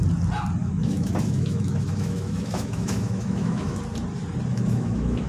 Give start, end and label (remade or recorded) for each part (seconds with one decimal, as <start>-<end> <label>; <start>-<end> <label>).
0.0-0.6 recorded; 0.6-3.8 remade; 3.8-4.5 recorded; 4.5-5.3 remade